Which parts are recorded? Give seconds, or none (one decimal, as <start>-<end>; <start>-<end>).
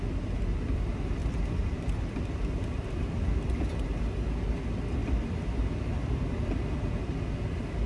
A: 0.0-1.2; 3.5-5.0; 5.6-7.9